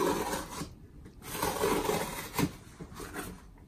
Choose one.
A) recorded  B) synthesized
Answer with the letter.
A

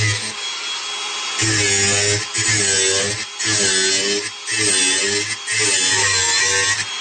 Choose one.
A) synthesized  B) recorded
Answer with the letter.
B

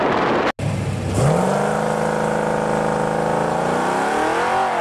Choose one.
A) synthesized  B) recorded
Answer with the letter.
B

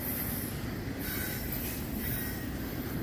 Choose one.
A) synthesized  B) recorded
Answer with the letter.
B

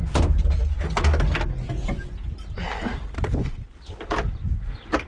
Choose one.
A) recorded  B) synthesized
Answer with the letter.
A